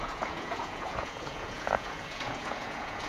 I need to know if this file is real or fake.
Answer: fake